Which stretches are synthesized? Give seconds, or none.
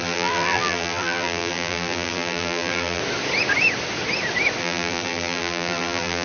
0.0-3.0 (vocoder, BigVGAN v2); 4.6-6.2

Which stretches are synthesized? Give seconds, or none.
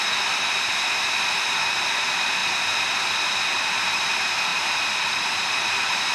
none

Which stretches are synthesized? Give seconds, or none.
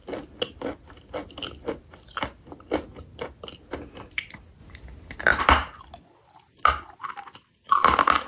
none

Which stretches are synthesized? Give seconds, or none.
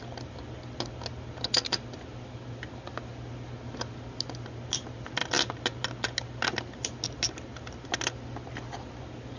none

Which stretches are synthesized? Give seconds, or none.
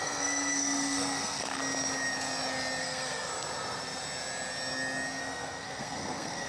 0.0-1.6 (codec, SNAC); 2.8-3.3; 5.2-6.5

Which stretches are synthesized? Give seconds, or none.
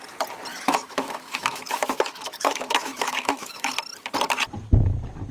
0.5-3.7 (autoencoder, DAC-VAE)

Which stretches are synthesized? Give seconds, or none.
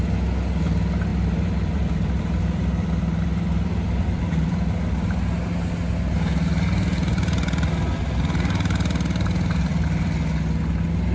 1.1-4.7 (vocoder, BigVGAN v2); 9.7-10.3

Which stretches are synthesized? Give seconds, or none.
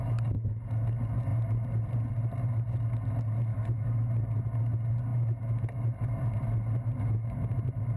3.5-4.1 (autoencoder, DAC-VAE)